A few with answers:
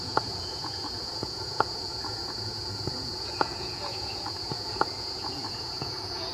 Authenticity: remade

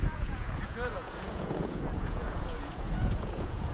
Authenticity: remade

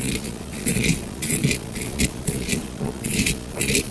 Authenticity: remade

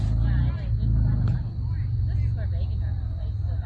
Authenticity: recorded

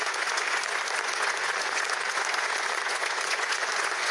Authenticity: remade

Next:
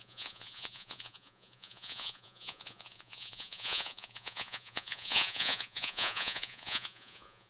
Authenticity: remade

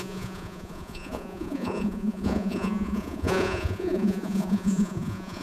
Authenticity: remade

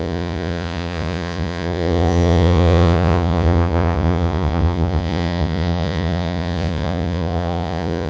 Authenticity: remade